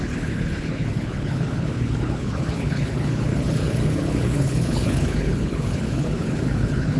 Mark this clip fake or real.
fake